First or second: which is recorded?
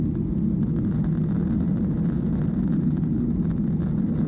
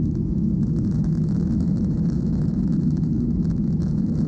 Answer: first